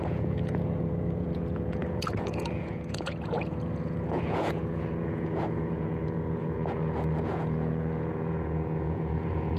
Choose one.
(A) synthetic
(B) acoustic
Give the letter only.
A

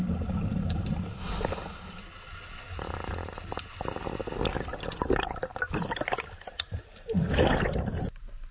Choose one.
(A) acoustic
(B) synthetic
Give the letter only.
A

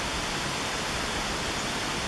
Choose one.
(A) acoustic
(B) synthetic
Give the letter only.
A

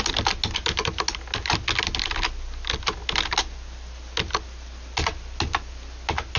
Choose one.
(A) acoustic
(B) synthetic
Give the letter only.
A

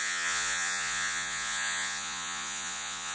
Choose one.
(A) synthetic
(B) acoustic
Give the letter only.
A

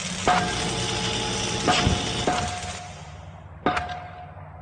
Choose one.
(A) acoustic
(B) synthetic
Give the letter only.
A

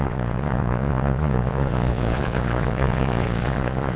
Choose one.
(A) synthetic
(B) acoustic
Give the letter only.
A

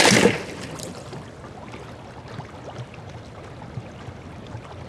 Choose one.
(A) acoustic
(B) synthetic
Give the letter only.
A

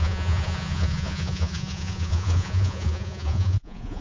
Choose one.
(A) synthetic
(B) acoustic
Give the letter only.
A